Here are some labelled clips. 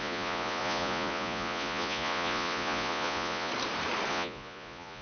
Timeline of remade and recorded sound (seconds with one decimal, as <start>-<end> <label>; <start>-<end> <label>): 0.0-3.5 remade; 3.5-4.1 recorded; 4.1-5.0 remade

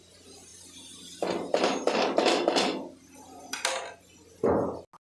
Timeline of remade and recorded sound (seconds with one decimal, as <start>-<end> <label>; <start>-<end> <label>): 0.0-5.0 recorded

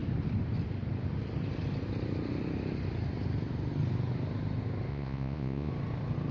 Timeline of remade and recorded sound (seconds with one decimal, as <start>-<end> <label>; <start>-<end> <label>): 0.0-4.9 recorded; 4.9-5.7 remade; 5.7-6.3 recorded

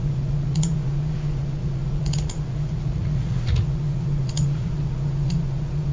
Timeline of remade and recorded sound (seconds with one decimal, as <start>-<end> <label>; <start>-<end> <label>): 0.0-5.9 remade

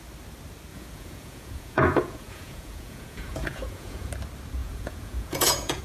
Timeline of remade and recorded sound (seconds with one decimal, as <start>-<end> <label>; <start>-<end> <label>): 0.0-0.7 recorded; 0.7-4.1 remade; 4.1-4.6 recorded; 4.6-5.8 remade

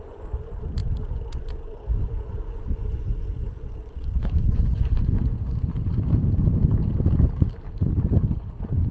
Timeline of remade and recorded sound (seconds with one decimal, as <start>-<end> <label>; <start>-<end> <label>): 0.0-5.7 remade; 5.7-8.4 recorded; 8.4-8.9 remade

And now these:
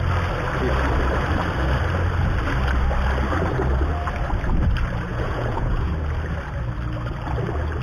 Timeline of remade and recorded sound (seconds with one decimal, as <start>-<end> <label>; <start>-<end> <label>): 0.0-5.1 recorded; 5.1-5.9 remade; 5.9-7.8 recorded